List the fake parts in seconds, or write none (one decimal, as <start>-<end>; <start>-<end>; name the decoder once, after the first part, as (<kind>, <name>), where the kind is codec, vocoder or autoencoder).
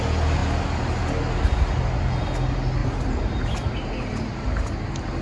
2.8-4.4 (vocoder, BigVGAN v2)